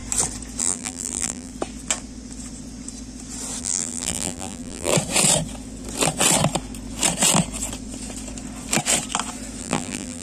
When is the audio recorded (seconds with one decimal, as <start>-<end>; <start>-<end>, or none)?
0.0-0.6; 1.5-3.6; 4.9-9.6